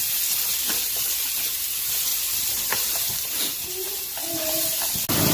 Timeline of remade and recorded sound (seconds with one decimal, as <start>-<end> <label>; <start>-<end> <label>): 0.0-5.3 recorded

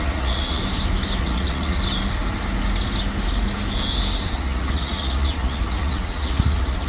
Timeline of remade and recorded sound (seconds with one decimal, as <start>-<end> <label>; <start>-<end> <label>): 0.0-0.6 remade; 0.6-1.2 recorded; 1.2-1.8 remade; 1.8-4.3 recorded; 4.3-6.9 remade

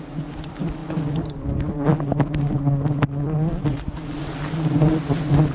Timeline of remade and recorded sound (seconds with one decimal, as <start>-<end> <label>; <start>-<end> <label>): 0.0-5.5 recorded